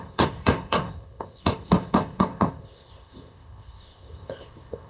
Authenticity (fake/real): fake